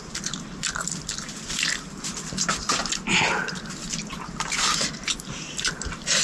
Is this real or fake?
real